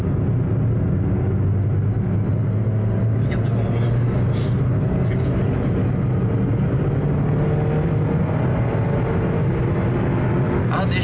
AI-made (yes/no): no